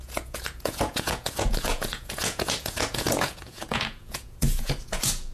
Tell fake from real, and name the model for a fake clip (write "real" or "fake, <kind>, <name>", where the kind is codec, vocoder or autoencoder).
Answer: fake, vocoder, Vocos